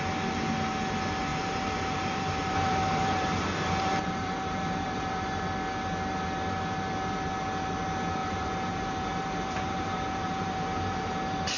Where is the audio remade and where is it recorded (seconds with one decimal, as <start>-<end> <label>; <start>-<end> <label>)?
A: 0.0-1.3 recorded; 1.3-5.4 remade; 5.4-8.2 recorded; 8.2-11.1 remade; 11.1-11.6 recorded

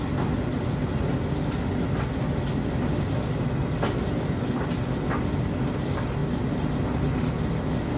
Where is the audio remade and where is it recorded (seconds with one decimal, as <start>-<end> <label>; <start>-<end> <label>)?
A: 0.0-8.0 recorded

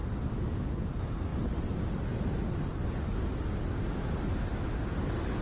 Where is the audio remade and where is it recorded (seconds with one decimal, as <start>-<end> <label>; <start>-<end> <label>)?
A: 0.0-5.4 recorded

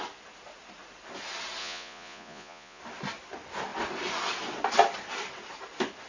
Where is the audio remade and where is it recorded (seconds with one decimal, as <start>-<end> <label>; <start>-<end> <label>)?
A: 0.0-1.6 recorded; 1.6-2.8 remade; 2.8-6.1 recorded

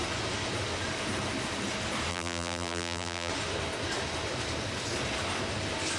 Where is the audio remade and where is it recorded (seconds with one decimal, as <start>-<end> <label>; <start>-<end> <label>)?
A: 0.0-2.1 recorded; 2.1-3.3 remade; 3.3-6.0 recorded

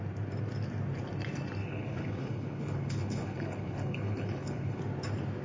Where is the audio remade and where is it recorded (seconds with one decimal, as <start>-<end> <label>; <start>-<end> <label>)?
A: 0.0-1.6 recorded; 1.6-4.8 remade; 4.8-5.4 recorded